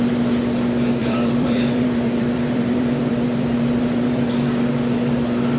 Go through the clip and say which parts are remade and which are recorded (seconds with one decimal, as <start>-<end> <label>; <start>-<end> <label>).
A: 0.0-1.0 recorded; 1.0-4.2 remade; 4.2-5.6 recorded